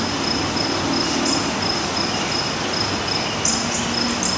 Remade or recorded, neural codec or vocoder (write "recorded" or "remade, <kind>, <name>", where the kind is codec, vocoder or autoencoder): recorded